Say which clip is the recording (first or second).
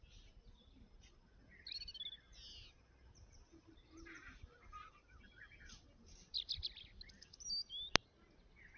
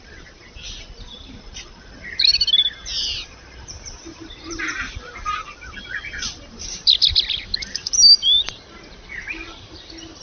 first